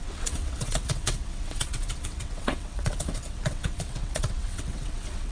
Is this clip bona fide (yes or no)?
no